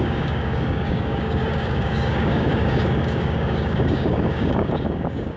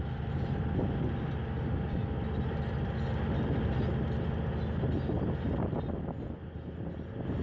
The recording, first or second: second